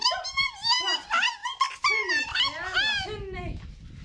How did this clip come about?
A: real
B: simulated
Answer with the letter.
A